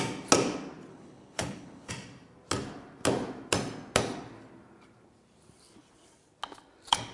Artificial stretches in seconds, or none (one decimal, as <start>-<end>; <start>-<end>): 0.9-1.9